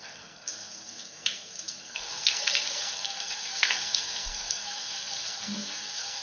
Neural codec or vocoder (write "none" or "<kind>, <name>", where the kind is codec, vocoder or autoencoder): codec, SNAC